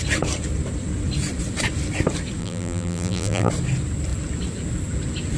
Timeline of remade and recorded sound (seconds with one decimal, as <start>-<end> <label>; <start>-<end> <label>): 0.0-2.4 recorded; 2.4-3.5 remade; 3.5-5.4 recorded